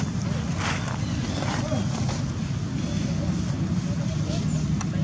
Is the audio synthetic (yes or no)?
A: no